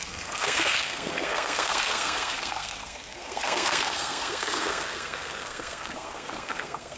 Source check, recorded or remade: remade